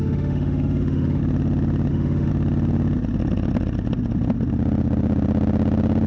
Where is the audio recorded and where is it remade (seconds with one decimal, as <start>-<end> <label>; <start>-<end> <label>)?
0.0-1.2 remade; 1.2-1.9 recorded; 1.9-2.3 remade; 2.3-6.1 recorded